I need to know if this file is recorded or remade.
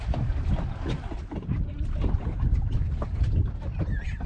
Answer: recorded